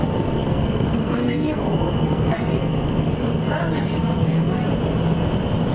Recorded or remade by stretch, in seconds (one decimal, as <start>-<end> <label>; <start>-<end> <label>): 0.0-4.6 remade; 4.6-5.7 recorded